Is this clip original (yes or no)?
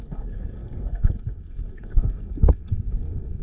no